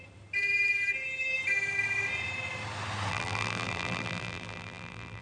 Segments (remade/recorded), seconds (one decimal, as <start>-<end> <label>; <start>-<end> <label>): 0.0-3.1 recorded; 3.1-5.2 remade